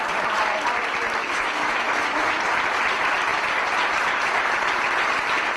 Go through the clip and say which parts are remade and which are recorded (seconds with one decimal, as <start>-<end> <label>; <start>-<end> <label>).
0.0-1.2 recorded; 1.2-2.4 remade; 2.4-5.6 recorded